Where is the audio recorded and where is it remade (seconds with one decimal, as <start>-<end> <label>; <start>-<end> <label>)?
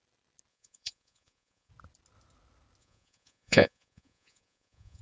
0.0-0.5 recorded; 0.5-1.7 remade; 1.7-2.8 recorded; 2.8-5.0 remade